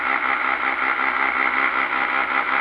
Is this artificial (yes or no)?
no